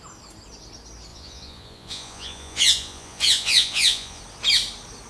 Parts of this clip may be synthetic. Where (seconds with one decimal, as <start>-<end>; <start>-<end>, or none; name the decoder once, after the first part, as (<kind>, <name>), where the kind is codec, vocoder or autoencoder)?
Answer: 1.1-4.2 (vocoder, Vocos)